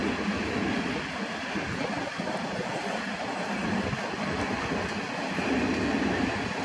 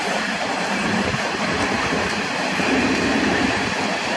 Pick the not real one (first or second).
second